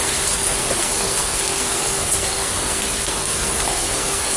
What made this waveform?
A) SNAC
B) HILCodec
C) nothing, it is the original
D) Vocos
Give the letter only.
A